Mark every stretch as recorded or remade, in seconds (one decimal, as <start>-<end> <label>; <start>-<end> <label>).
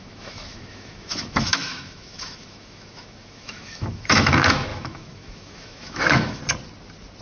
0.0-6.4 remade; 6.4-7.2 recorded